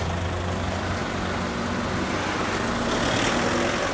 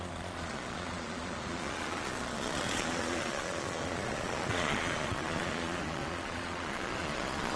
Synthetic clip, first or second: second